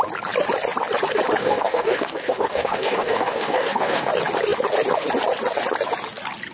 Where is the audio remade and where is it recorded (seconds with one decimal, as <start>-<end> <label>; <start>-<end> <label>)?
0.0-1.4 recorded; 1.4-4.1 remade; 4.1-6.5 recorded